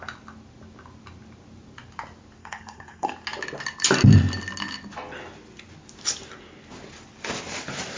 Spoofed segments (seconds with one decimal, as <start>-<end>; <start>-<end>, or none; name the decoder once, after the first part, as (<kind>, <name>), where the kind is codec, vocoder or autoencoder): 2.4-3.1 (codec, SNAC)